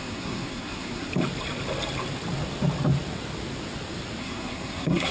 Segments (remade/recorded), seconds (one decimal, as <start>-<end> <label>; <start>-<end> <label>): 0.0-1.1 remade; 1.1-4.2 recorded; 4.2-5.1 remade